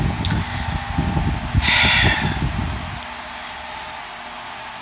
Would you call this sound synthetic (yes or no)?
no